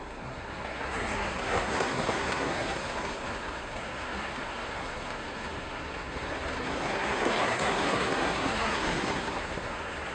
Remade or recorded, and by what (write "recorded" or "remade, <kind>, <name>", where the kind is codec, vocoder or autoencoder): remade, codec, SNAC